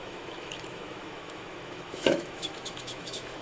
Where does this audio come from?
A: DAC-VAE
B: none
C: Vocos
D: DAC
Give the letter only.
A